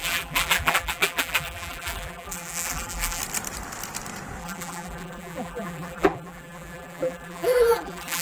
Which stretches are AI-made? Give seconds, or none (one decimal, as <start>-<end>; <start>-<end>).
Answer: 0.0-3.2; 4.4-8.2